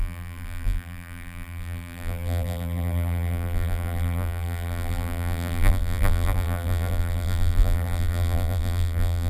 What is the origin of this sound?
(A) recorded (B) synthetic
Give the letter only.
B